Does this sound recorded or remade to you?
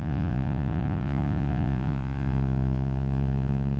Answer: remade